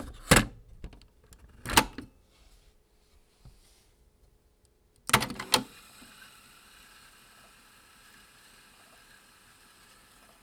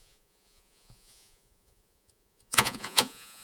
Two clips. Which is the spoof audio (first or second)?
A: second